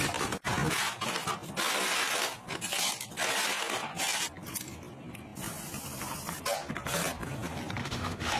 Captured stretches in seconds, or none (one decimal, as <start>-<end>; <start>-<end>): 0.0-7.8